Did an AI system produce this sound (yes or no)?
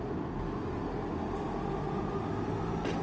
no